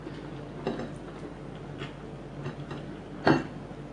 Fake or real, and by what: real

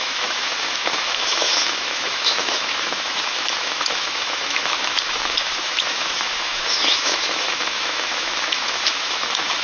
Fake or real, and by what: fake, autoencoder, DAC-VAE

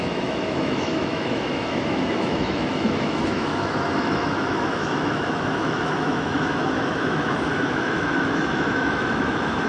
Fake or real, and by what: fake, autoencoder, DAC-VAE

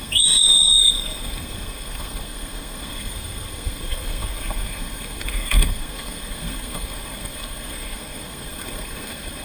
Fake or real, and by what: fake, codec, SNAC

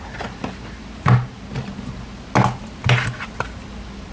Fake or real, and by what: real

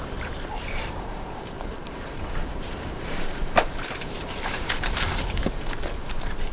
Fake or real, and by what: fake, vocoder, BigVGAN v2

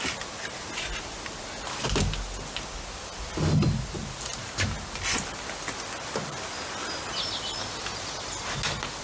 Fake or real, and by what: real